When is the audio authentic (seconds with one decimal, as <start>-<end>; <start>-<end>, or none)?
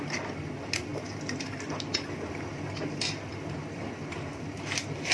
0.0-5.1